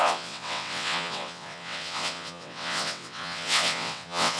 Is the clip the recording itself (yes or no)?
no